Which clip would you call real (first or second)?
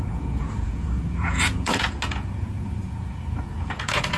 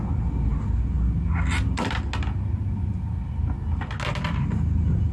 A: second